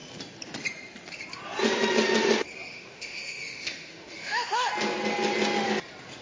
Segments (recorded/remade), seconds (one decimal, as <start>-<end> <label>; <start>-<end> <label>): 0.0-2.7 recorded; 2.7-4.7 remade; 4.7-6.2 recorded